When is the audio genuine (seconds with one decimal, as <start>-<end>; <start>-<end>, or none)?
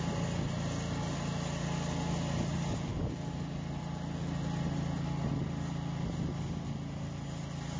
0.0-7.8